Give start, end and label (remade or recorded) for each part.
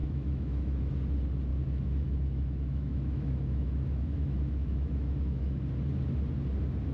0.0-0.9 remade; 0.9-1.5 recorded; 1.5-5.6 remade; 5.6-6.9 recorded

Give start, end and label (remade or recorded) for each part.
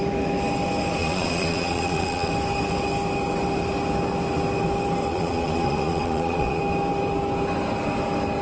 0.0-1.0 recorded; 1.0-2.3 remade; 2.3-5.1 recorded; 5.1-6.6 remade; 6.6-8.4 recorded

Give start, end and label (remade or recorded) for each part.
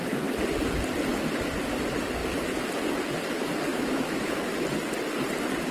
0.0-3.7 recorded; 3.7-4.5 remade; 4.5-5.7 recorded